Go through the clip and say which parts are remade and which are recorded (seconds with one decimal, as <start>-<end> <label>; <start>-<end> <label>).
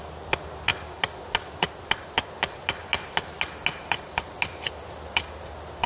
0.0-5.9 recorded